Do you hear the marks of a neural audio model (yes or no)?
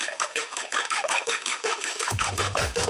yes